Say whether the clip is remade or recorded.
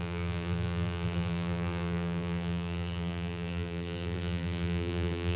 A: remade